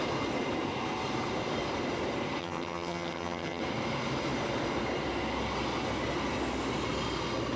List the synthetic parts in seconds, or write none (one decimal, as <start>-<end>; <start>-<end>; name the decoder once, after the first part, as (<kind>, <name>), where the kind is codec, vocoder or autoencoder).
2.4-3.6 (vocoder, HiFi-GAN)